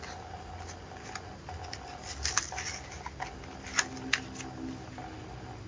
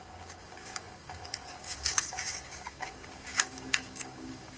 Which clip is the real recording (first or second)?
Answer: first